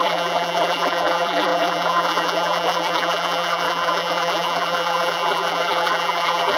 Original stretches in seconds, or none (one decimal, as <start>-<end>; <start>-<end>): none